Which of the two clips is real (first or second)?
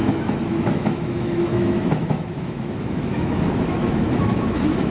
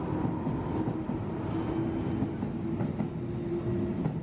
second